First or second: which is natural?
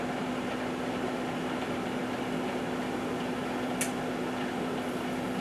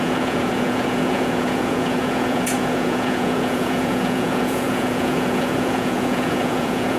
first